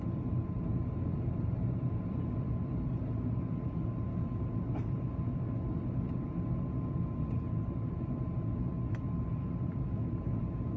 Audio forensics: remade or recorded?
recorded